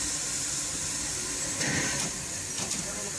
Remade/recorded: recorded